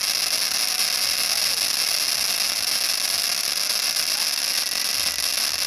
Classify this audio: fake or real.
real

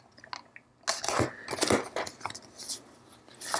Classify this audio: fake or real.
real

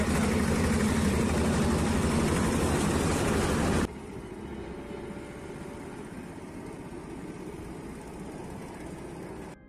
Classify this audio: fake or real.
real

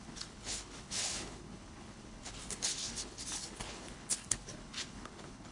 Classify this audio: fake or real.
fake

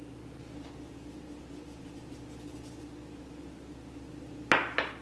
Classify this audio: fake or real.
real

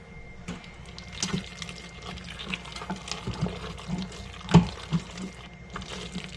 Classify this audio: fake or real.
real